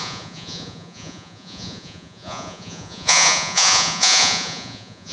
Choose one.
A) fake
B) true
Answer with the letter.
A